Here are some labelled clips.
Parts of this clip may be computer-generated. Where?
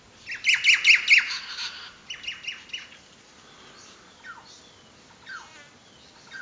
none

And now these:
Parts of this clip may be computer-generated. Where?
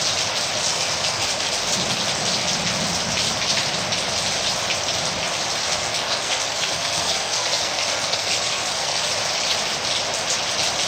0.7-1.5; 5.6-9.1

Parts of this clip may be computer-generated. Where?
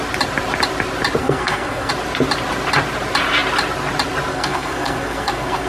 1.2-1.9; 4.3-5.7